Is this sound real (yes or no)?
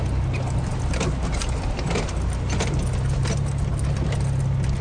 yes